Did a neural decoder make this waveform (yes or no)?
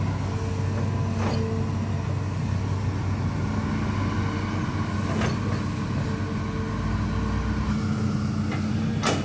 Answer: no